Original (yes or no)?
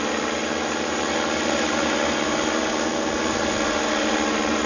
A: yes